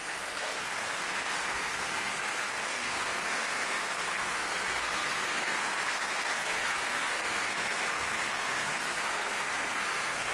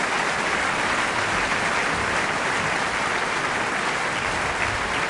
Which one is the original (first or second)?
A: second